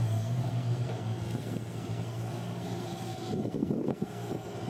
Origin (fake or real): fake